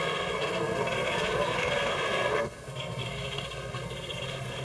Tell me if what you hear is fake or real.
fake